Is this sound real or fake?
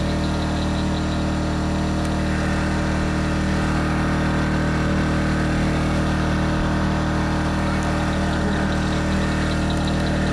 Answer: real